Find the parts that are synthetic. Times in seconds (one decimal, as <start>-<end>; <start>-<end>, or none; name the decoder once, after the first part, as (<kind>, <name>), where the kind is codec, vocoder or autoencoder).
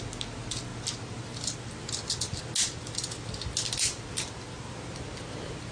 none